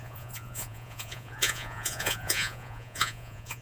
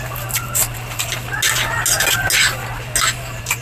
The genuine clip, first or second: second